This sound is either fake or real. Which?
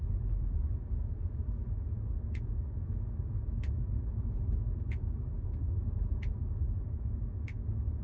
fake